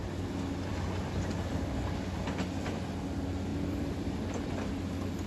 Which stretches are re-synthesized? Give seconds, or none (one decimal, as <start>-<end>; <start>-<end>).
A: none